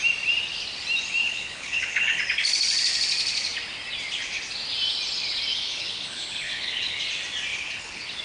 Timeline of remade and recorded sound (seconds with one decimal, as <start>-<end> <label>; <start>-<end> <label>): 0.0-1.2 recorded; 1.2-2.2 remade; 2.2-5.5 recorded; 5.5-7.0 remade; 7.0-7.5 recorded; 7.5-8.2 remade